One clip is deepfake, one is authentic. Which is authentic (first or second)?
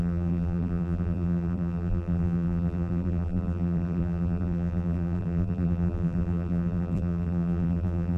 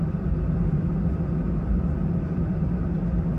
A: second